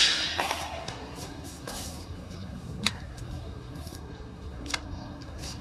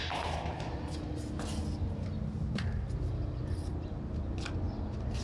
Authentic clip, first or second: second